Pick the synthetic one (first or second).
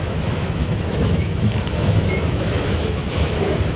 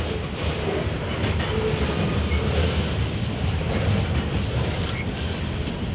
first